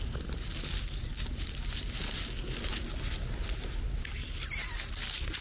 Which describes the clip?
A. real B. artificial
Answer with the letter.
A